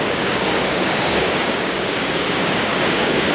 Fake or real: fake